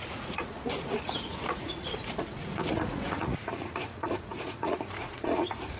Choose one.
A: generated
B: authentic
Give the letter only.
A